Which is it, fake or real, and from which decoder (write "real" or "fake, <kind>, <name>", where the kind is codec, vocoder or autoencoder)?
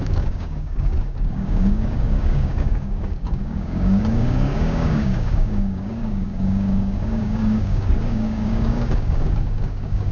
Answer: fake, codec, DAC